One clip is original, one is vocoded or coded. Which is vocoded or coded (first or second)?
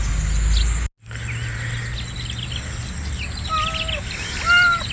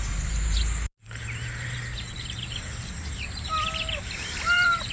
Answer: second